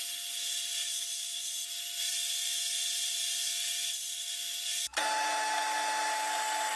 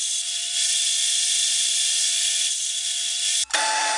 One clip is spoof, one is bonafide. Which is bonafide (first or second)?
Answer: first